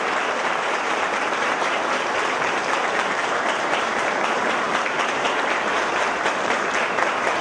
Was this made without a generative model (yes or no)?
no